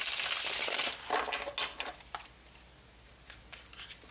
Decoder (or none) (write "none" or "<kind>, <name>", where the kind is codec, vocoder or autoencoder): none